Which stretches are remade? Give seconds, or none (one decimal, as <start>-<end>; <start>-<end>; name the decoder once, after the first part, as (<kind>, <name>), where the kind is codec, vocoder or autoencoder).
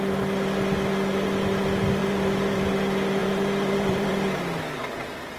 2.0-2.7 (vocoder, BigVGAN v2); 3.2-4.1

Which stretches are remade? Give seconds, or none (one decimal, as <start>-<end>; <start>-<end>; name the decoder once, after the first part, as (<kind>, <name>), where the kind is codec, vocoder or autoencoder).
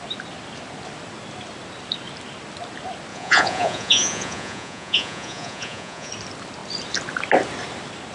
3.1-6.1 (vocoder, Vocos)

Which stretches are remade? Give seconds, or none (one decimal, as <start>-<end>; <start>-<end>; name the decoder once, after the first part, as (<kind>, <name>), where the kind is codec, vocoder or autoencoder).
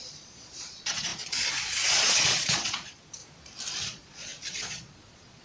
0.0-3.2 (vocoder, Vocos); 3.8-5.4